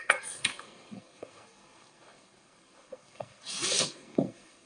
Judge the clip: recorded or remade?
remade